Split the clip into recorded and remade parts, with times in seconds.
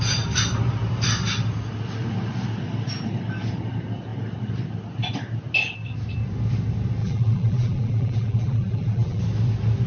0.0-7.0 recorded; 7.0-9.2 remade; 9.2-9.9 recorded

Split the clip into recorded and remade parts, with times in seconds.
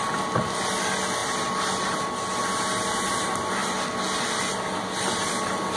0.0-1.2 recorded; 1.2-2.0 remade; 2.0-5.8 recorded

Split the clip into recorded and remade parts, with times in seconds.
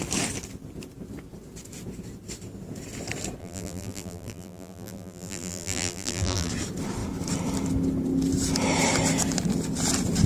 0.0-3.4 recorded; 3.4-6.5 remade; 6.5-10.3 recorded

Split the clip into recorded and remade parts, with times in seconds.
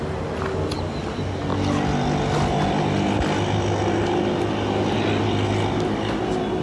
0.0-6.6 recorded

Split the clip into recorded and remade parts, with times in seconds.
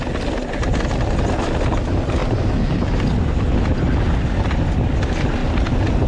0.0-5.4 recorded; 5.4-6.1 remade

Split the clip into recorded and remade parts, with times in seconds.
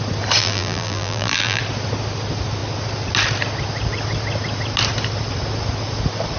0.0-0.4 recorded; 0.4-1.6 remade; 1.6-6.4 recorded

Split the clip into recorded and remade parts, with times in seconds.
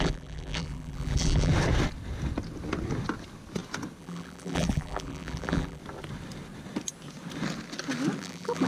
0.0-1.5 remade; 1.5-4.0 recorded; 4.0-5.8 remade; 5.8-8.2 recorded; 8.2-8.7 remade